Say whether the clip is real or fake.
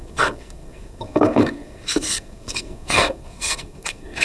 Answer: fake